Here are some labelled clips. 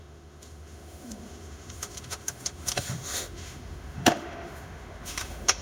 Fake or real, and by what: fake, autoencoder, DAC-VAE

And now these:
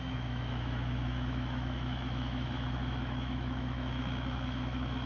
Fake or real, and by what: fake, autoencoder, DAC-VAE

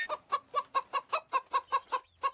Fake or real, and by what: real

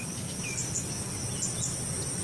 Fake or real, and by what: real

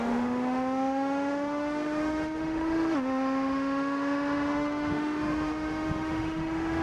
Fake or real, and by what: fake, autoencoder, DAC-VAE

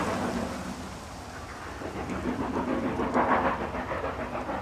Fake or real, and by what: real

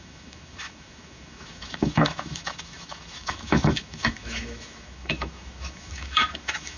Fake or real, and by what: fake, autoencoder, DAC-VAE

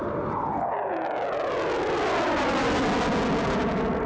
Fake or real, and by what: real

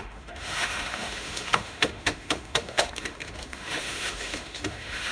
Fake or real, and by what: fake, autoencoder, DAC-VAE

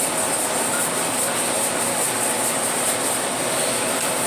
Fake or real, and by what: real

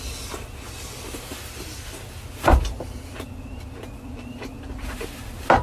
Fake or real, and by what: real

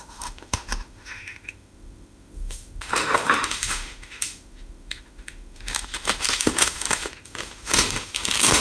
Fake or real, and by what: fake, autoencoder, DAC-VAE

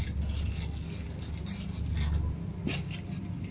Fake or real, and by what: real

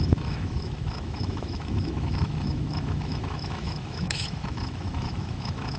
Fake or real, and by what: fake, autoencoder, DAC-VAE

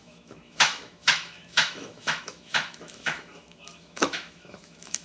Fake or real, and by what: fake, autoencoder, DAC-VAE